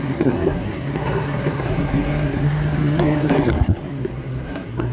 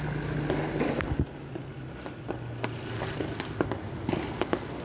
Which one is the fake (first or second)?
first